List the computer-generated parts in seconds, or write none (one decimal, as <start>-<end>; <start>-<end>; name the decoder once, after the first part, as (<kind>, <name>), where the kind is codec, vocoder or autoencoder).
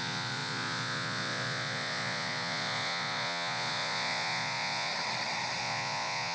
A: 0.0-4.9 (vocoder, Vocos); 5.6-6.3